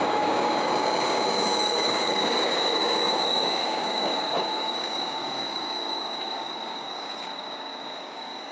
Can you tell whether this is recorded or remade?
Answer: remade